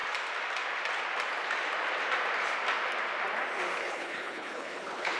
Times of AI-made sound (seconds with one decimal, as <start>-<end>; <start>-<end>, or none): 3.8-5.2